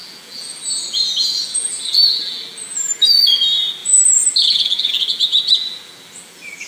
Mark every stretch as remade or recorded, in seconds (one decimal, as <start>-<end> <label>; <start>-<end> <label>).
0.0-6.7 remade